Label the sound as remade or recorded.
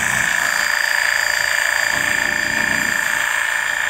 recorded